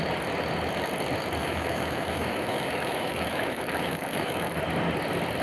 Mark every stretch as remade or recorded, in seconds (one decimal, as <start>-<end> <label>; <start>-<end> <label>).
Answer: 0.0-1.4 recorded; 1.4-4.6 remade; 4.6-5.4 recorded

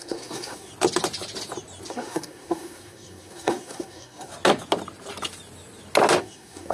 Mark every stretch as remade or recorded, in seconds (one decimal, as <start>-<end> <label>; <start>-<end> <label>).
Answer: 0.0-0.7 remade; 0.7-1.9 recorded; 1.9-4.3 remade; 4.3-6.2 recorded; 6.2-6.7 remade

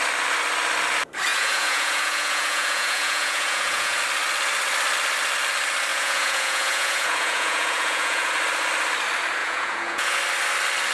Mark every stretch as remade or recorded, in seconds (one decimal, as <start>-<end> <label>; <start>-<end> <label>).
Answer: 0.0-1.3 recorded; 1.3-4.0 remade; 4.0-5.9 recorded; 5.9-8.3 remade; 8.3-9.4 recorded; 9.4-10.2 remade; 10.2-10.9 recorded

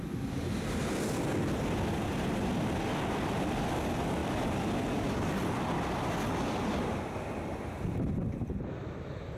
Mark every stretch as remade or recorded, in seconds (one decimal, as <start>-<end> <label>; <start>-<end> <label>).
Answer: 0.0-9.4 recorded

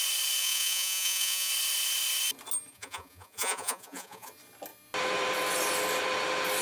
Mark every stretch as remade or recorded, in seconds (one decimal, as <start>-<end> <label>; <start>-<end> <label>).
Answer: 0.0-0.4 recorded; 0.4-1.5 remade; 1.5-2.7 recorded; 2.7-4.3 remade; 4.3-6.6 recorded

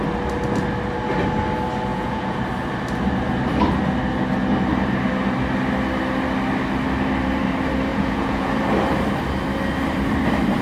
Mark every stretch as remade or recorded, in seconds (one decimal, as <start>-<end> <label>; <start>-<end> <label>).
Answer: 0.0-1.9 recorded; 1.9-2.4 remade; 2.4-7.9 recorded; 7.9-8.5 remade; 8.5-10.6 recorded

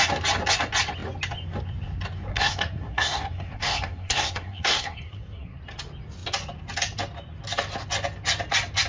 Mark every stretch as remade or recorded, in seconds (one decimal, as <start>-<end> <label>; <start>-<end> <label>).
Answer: 0.0-2.3 recorded; 2.3-5.6 remade; 5.6-8.9 recorded